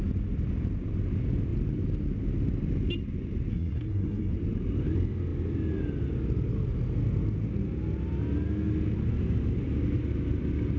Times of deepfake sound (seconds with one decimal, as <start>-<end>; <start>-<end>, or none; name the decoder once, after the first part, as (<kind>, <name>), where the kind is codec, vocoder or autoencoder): 3.5-4.3 (codec, SNAC)